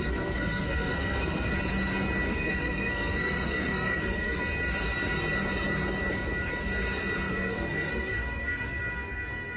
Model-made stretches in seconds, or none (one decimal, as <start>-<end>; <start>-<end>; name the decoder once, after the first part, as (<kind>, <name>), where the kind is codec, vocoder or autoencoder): 0.0-1.5 (codec, SNAC); 2.3-4.4; 7.3-9.6